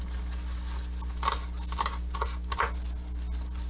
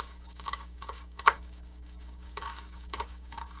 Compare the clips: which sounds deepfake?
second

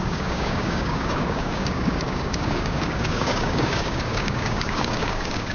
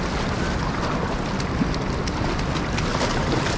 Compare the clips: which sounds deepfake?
first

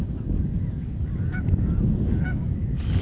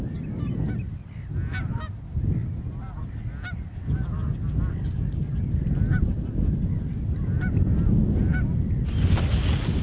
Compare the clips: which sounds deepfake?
first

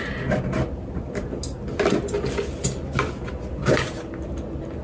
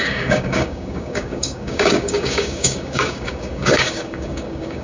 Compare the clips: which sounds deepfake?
second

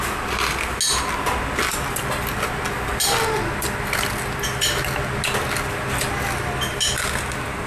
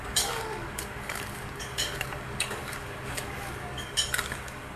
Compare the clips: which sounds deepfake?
second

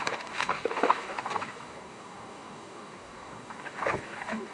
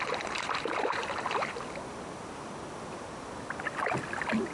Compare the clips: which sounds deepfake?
first